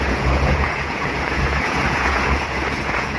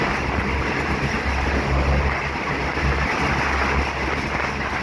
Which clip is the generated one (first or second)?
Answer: first